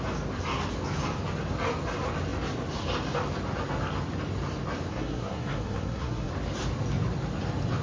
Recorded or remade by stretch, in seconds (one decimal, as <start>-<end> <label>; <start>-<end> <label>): 0.0-4.9 recorded; 4.9-6.3 remade; 6.3-7.8 recorded